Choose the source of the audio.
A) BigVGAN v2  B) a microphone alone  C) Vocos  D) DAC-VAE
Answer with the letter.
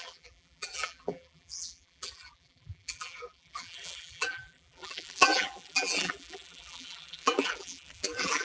A